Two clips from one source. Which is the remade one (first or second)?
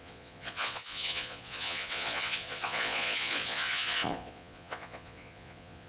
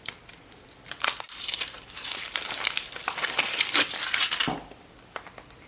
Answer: first